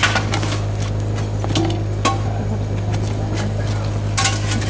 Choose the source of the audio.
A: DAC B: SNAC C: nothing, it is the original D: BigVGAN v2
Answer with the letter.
C